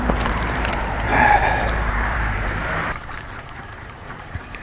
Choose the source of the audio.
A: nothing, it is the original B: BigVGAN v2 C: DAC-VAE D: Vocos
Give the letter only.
B